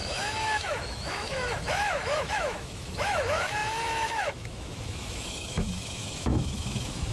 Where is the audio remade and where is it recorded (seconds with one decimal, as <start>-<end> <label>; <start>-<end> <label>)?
0.0-7.1 remade